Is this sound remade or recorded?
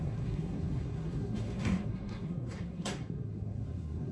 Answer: remade